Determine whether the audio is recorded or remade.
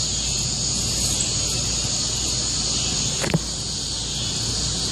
recorded